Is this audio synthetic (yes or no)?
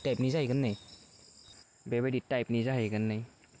no